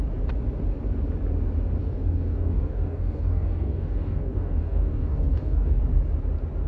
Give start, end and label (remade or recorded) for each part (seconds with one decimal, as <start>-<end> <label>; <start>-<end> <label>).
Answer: 0.0-1.8 recorded; 1.8-5.8 remade; 5.8-6.7 recorded